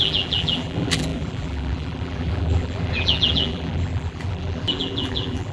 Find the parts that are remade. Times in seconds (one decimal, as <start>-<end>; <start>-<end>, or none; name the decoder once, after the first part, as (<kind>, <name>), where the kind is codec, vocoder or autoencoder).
0.0-5.5 (vocoder, BigVGAN v2)